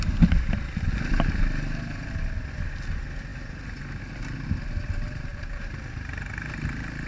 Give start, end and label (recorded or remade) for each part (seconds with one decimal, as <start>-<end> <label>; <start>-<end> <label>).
0.0-7.1 recorded